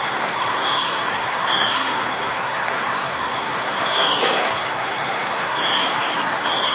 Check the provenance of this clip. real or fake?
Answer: fake